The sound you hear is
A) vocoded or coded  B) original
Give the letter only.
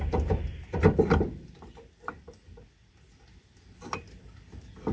B